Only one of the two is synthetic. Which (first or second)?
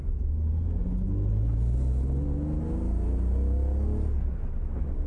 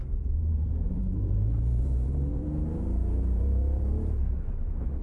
second